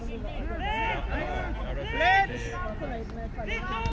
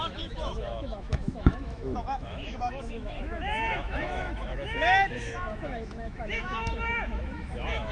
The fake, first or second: second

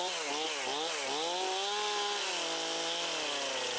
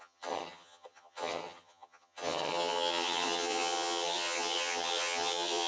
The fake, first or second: second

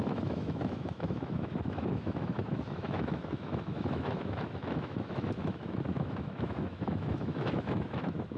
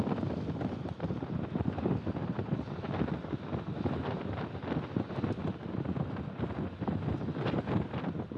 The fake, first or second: first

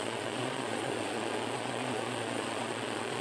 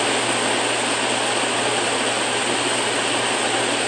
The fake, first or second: first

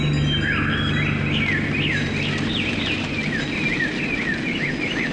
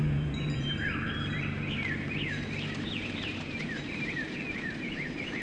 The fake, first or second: second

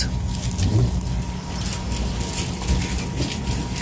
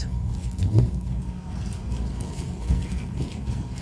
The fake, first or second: second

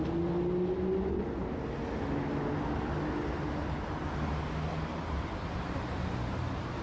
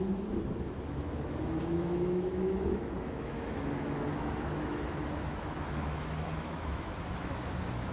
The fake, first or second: second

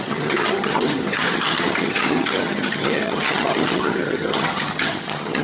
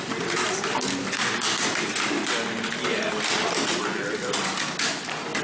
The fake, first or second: first